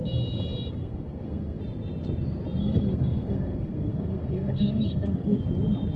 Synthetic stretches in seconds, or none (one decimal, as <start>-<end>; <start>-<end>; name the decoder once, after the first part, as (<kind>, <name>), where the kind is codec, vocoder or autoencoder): 0.8-1.6 (codec, SNAC); 2.6-5.4